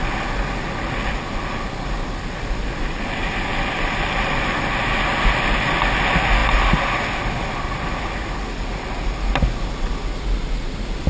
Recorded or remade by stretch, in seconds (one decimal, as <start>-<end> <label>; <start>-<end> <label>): 0.0-11.1 recorded